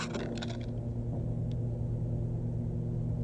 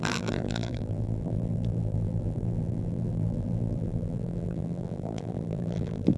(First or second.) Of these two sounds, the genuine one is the first